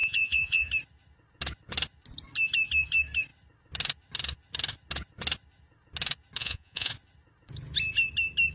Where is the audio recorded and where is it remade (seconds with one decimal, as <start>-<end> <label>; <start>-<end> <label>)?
0.0-0.7 remade; 0.7-6.4 recorded; 6.4-6.9 remade; 6.9-8.5 recorded